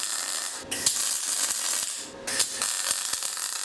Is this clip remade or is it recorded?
recorded